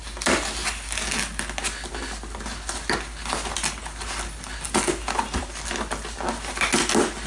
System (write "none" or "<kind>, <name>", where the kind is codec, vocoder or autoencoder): none